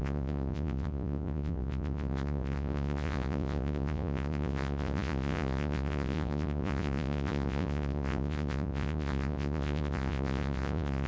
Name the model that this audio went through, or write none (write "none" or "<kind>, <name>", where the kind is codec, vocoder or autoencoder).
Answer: vocoder, Vocos